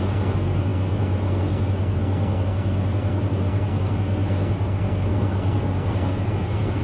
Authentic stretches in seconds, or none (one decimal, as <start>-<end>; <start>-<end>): none